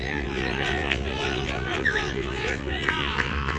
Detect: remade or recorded remade